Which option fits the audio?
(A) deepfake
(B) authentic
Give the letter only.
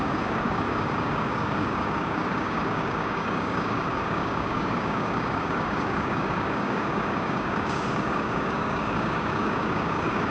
A